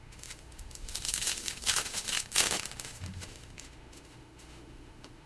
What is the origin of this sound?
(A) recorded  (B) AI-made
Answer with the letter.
B